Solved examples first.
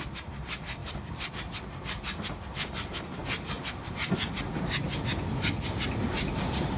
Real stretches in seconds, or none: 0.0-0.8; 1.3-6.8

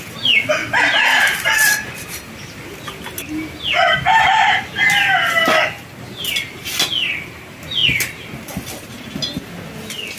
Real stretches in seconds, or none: 0.0-0.6; 2.2-4.1; 5.0-7.8; 9.0-10.2

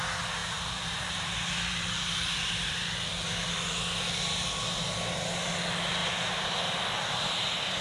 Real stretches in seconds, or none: 0.0-0.4; 1.9-6.0; 6.6-7.8

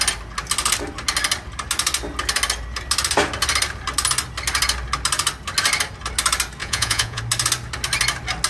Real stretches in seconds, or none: 0.0-6.6; 7.2-8.5